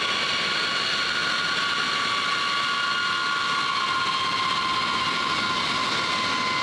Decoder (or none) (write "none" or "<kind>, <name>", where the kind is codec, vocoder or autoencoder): none